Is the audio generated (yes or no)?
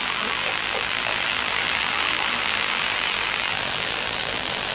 yes